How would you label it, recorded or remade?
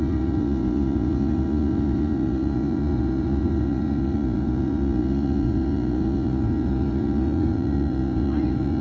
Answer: remade